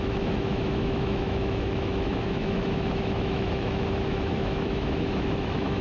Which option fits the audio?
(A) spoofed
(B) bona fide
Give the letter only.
A